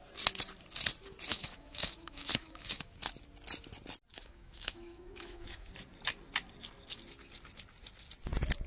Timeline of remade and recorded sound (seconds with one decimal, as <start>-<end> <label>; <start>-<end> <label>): 0.0-1.3 recorded; 1.3-3.0 remade; 3.0-4.1 recorded; 4.1-5.7 remade; 5.7-8.7 recorded